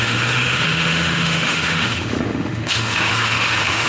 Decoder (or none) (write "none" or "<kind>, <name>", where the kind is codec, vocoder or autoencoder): autoencoder, DAC-VAE